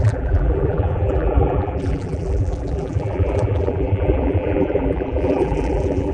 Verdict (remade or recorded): remade